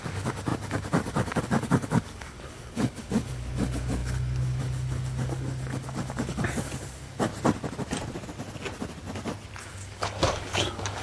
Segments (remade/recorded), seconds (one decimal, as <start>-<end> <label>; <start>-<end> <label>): 0.0-7.3 remade; 7.3-9.6 recorded; 9.6-11.0 remade